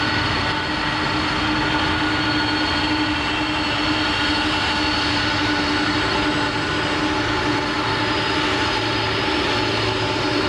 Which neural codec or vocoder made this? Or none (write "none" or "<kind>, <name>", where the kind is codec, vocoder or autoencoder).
none